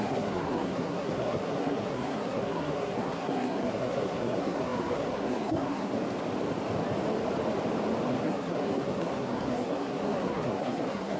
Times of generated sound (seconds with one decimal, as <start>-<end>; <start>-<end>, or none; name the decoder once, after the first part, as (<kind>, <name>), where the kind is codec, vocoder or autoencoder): 0.0-5.9 (codec, SNAC); 8.1-11.2